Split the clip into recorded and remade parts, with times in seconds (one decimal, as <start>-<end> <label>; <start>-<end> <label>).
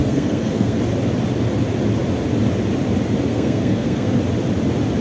0.0-0.8 remade; 0.8-3.3 recorded; 3.3-4.2 remade; 4.2-5.0 recorded